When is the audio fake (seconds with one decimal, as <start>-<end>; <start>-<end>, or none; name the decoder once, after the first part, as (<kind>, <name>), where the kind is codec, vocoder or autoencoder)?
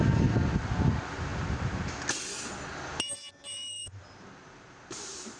3.5-4.0 (autoencoder, DAC-VAE)